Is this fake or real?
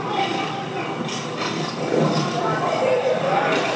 real